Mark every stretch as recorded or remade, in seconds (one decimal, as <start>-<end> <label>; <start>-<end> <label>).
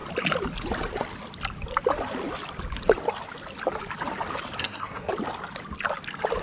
0.0-4.6 recorded; 4.6-5.1 remade; 5.1-6.4 recorded